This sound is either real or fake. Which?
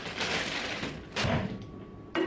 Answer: real